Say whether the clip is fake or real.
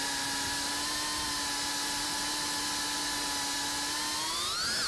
real